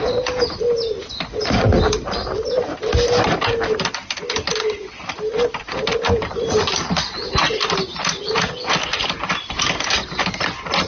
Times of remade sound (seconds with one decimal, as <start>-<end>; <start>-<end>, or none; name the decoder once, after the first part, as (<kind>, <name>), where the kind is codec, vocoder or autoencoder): none